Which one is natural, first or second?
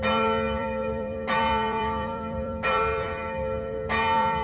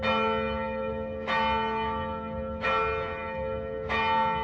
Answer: second